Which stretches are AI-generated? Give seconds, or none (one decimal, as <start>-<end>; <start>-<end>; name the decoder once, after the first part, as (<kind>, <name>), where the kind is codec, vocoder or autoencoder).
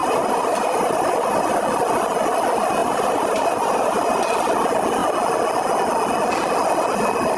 0.0-1.6 (vocoder, BigVGAN v2); 2.8-4.2